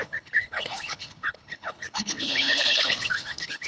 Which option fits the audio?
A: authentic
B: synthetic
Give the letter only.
B